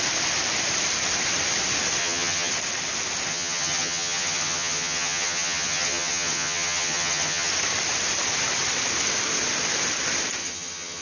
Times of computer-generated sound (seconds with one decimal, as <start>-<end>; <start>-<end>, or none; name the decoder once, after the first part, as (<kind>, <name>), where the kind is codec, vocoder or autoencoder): 2.0-2.5 (vocoder, HiFi-GAN); 3.3-7.5; 10.4-11.0